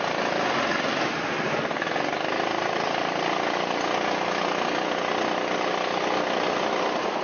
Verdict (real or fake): real